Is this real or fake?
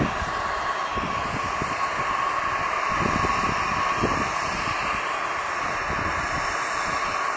real